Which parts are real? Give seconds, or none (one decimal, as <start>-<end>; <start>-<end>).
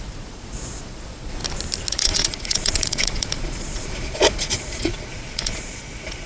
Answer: 1.4-1.9